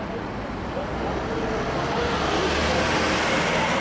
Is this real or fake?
real